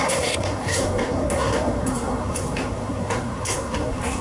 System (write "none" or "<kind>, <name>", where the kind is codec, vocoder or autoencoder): codec, SNAC